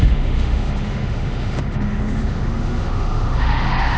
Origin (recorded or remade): remade